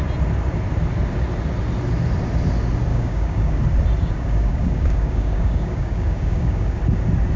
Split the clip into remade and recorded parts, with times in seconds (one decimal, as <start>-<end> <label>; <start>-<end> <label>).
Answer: 0.0-2.9 recorded; 2.9-3.6 remade; 3.6-4.0 recorded; 4.0-6.8 remade; 6.8-7.4 recorded